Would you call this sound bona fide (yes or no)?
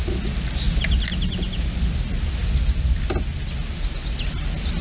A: yes